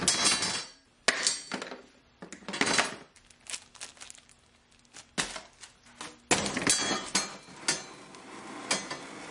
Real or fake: real